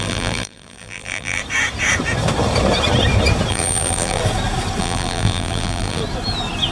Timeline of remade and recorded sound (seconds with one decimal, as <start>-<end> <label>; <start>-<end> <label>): 0.0-1.4 remade; 1.4-3.5 recorded; 3.5-4.2 remade; 4.2-4.8 recorded; 4.8-6.0 remade; 6.0-6.7 recorded